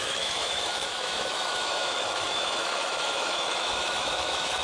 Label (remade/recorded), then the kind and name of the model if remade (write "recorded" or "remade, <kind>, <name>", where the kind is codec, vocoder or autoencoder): remade, autoencoder, DAC-VAE